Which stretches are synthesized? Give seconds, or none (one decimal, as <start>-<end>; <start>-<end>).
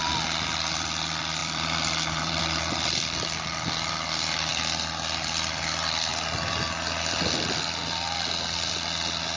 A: 1.4-2.4